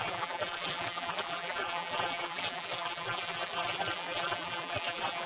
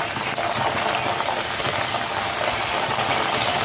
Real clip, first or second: second